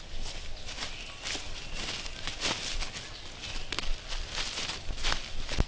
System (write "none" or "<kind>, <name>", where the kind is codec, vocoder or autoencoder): none